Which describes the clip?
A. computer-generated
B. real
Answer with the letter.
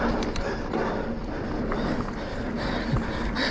B